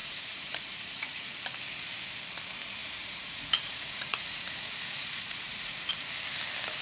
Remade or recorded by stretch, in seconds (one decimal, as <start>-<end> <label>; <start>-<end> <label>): 0.0-1.3 remade; 1.3-2.8 recorded; 2.8-5.9 remade; 5.9-6.8 recorded